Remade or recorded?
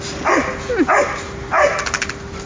recorded